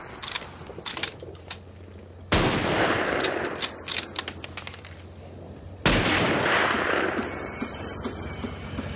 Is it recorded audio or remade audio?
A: recorded